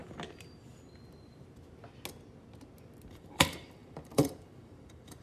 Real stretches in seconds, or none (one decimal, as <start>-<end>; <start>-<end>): 0.0-3.1